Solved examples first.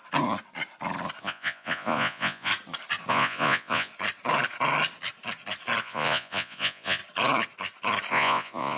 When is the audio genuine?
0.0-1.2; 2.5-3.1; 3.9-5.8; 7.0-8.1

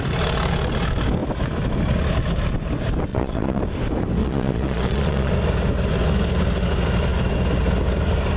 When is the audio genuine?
0.0-3.1; 3.6-4.2; 5.3-8.4

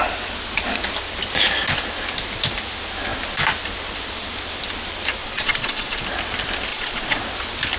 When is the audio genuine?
0.0-5.2; 6.0-6.7; 7.2-7.8